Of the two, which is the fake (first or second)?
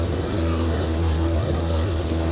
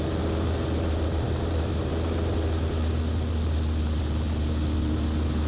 first